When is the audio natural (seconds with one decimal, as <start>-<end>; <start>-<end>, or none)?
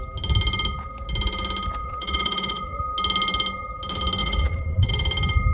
0.0-1.8; 2.8-4.2; 4.9-5.5